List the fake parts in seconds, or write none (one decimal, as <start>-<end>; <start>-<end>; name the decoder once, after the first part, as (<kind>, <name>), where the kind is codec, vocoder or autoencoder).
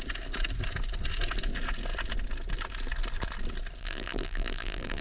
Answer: 3.8-5.0 (vocoder, BigVGAN v2)